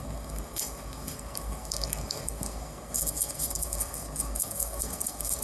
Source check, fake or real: fake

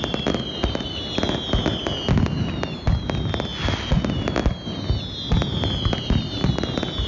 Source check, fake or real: real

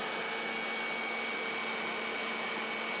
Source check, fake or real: real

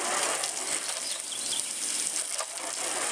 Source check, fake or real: real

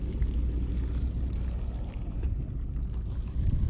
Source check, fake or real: real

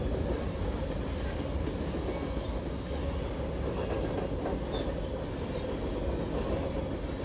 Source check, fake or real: real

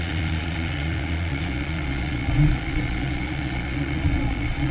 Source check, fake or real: fake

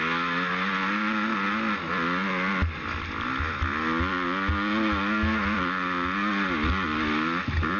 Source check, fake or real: real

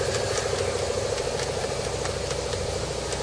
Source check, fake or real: real